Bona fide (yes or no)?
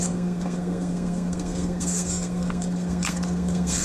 no